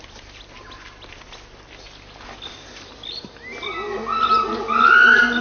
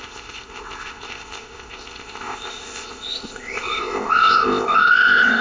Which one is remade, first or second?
second